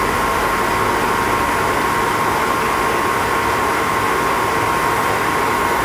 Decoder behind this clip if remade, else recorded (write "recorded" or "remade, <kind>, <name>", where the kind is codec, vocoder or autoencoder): recorded